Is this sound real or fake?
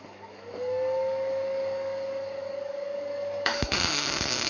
fake